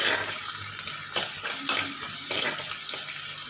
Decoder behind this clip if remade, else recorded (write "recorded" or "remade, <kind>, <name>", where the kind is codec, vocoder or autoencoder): remade, vocoder, BigVGAN v2